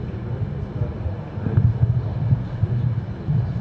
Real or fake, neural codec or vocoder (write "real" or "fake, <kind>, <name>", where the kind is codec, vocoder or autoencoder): real